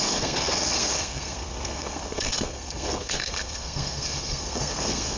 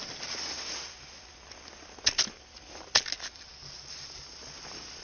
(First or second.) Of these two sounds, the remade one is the first